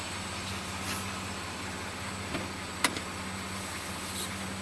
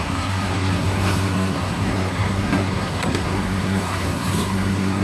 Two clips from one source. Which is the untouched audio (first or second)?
first